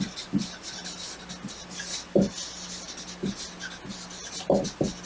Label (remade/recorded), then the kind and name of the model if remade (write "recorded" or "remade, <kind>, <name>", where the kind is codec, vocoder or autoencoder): recorded